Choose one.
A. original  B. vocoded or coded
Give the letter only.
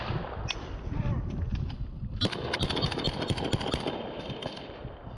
A